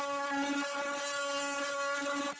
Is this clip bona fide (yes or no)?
yes